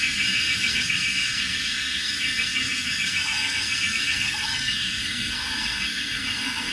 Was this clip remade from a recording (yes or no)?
yes